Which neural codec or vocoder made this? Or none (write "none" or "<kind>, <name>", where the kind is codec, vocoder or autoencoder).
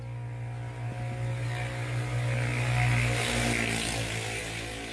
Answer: none